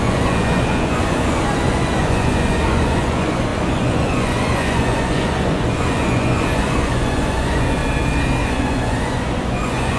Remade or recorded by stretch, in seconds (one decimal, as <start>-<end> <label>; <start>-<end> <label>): 0.0-7.8 remade; 7.8-8.4 recorded; 8.4-10.0 remade